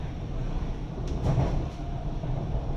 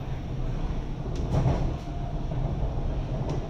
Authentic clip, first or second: second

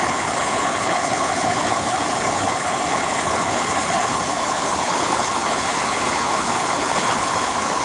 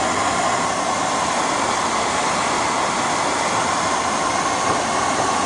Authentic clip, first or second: second